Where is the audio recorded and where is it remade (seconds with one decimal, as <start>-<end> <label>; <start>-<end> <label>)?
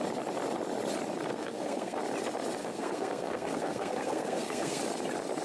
0.0-1.3 recorded; 1.3-2.0 remade; 2.0-2.6 recorded; 2.6-4.8 remade; 4.8-5.4 recorded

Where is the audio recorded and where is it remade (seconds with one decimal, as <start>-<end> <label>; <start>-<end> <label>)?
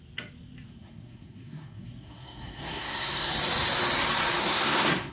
0.0-0.7 recorded; 0.7-3.3 remade; 3.3-4.4 recorded; 4.4-5.1 remade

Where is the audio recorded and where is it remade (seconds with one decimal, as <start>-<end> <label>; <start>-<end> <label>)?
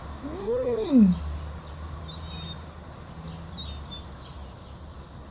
0.0-0.4 recorded; 0.4-0.9 remade; 0.9-5.3 recorded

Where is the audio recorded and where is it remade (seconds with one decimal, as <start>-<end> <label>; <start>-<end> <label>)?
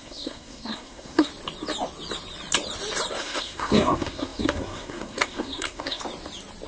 0.0-1.3 remade; 1.3-3.1 recorded; 3.1-6.0 remade; 6.0-6.7 recorded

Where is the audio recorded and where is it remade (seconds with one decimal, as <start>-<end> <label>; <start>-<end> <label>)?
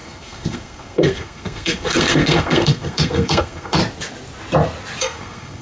0.0-3.8 remade; 3.8-5.0 recorded; 5.0-5.6 remade